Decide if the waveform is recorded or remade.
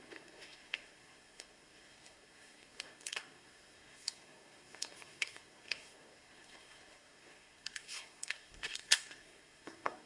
remade